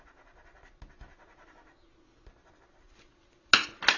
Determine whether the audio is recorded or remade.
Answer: recorded